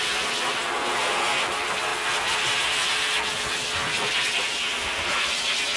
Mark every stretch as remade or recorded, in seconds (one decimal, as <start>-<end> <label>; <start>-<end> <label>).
0.0-5.8 recorded